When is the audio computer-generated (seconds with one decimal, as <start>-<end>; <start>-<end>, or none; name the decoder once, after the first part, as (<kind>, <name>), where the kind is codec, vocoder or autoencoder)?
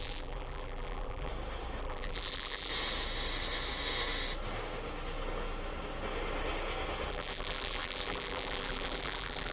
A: 0.0-1.3 (vocoder, BigVGAN v2); 1.8-2.7; 7.1-9.5